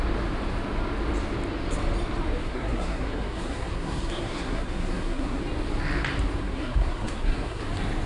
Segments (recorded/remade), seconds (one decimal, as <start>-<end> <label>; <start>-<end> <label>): 0.0-2.4 recorded; 2.4-5.4 remade; 5.4-6.4 recorded; 6.4-7.6 remade; 7.6-8.1 recorded